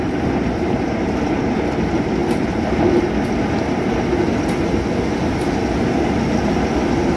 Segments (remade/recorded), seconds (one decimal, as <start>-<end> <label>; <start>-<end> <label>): 0.0-7.2 recorded